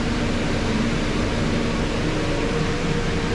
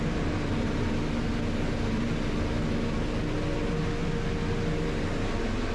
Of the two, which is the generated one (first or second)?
first